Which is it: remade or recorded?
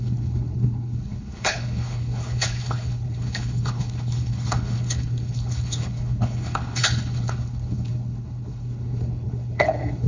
remade